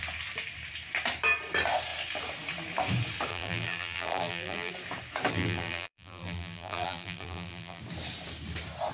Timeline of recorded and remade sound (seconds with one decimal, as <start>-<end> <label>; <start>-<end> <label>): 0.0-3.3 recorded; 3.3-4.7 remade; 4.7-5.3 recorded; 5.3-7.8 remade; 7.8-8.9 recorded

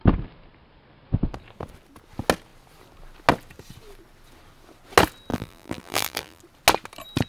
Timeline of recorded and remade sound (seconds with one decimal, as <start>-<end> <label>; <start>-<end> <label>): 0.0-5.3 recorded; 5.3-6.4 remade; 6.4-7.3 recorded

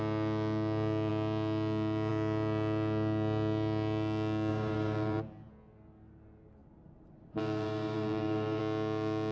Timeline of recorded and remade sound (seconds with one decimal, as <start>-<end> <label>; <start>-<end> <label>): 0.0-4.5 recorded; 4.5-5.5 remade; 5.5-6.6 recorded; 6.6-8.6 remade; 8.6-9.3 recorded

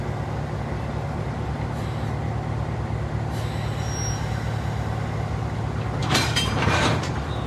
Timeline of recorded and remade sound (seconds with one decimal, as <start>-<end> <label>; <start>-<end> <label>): 0.0-6.0 recorded; 6.0-7.1 remade; 7.1-7.5 recorded

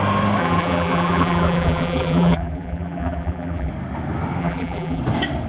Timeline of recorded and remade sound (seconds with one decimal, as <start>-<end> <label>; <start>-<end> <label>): 0.0-0.4 recorded; 0.4-3.7 remade; 3.7-4.4 recorded; 4.4-5.0 remade; 5.0-5.5 recorded

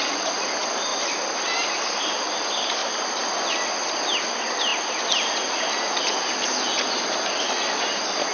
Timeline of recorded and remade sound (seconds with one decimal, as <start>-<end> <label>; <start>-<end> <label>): 0.0-0.9 recorded; 0.9-2.4 remade; 2.4-8.3 recorded

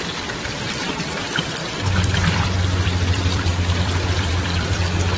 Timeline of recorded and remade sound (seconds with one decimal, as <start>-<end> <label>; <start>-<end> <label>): 0.0-5.2 remade

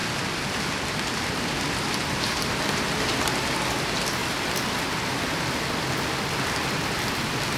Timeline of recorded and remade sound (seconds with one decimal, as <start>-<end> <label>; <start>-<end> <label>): 0.0-7.6 recorded